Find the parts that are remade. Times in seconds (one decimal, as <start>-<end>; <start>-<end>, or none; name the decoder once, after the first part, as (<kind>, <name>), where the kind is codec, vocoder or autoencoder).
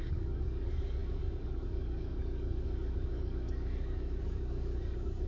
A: 0.0-5.3 (codec, DAC)